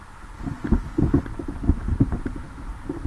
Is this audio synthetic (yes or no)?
no